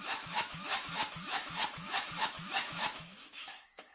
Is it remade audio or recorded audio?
remade